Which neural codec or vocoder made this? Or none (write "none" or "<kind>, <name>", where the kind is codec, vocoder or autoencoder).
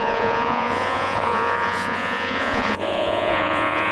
vocoder, Vocos